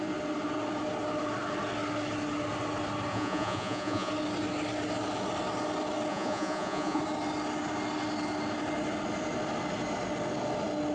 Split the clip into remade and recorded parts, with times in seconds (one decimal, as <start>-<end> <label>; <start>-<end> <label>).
0.0-3.1 recorded; 3.1-4.1 remade; 4.1-6.1 recorded; 6.1-7.0 remade; 7.0-10.9 recorded